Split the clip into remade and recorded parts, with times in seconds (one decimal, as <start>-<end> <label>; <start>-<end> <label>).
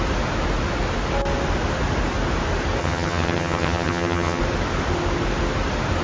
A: 0.0-2.8 recorded; 2.8-4.4 remade; 4.4-6.0 recorded